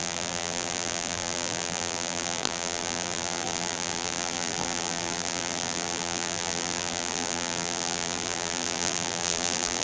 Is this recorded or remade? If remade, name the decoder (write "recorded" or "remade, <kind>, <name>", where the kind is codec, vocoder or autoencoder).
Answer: remade, vocoder, BigVGAN v2